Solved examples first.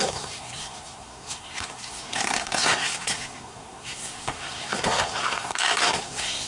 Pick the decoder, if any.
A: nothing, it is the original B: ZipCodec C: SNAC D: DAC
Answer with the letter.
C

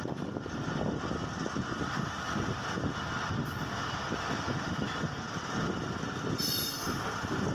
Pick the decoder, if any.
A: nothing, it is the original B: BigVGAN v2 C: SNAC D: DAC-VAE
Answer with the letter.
A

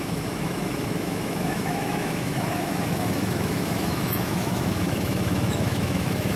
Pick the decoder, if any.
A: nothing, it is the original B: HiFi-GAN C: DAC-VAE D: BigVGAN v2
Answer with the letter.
C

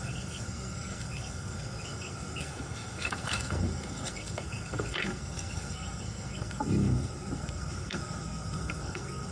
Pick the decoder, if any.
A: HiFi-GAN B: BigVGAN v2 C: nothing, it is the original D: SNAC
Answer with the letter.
D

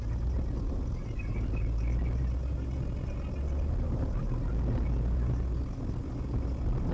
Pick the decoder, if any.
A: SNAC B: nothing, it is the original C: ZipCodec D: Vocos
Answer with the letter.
B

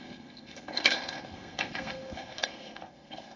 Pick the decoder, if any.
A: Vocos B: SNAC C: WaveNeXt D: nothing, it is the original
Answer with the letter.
B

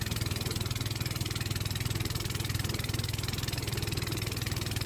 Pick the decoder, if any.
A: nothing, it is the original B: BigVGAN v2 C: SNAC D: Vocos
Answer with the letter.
B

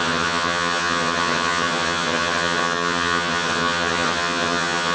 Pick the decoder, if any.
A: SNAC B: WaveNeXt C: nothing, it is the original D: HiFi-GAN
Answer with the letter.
D